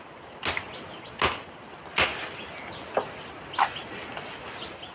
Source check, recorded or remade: recorded